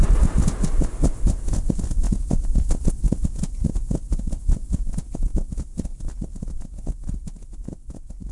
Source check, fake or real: real